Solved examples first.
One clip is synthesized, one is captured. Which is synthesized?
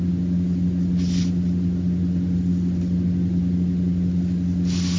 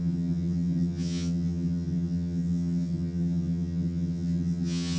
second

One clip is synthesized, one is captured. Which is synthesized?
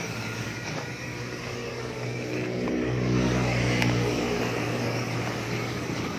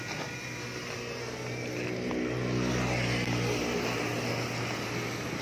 first